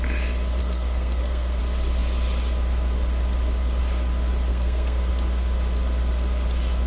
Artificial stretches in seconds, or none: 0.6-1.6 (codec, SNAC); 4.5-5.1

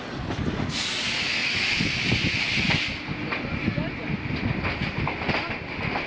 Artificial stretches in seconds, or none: none

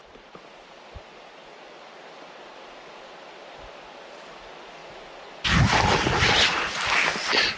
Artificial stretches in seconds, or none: none